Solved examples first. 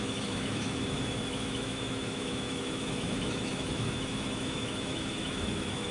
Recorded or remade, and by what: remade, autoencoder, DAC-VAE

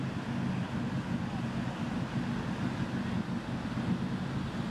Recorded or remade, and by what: recorded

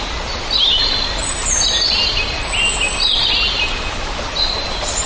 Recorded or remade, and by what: recorded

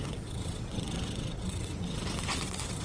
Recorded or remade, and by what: remade, vocoder, WaveNeXt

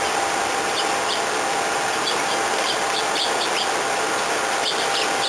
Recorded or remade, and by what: recorded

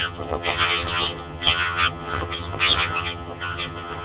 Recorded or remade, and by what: remade, vocoder, HiFi-GAN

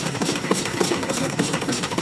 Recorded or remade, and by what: remade, codec, SNAC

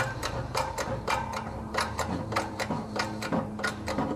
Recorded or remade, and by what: remade, vocoder, BigVGAN v2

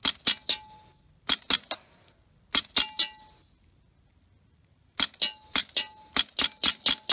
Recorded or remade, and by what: recorded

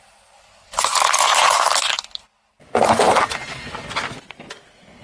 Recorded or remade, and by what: recorded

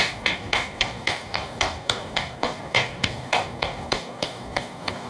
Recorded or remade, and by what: remade, codec, DAC